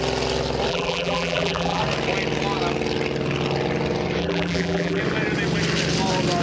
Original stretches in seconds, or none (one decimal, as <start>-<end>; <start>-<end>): 0.0-0.7; 1.8-4.2; 5.0-6.4